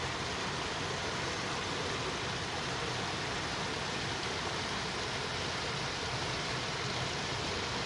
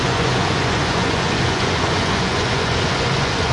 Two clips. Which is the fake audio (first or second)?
second